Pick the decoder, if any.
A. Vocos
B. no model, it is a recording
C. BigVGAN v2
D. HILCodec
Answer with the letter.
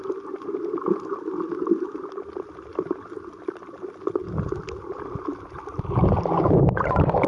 B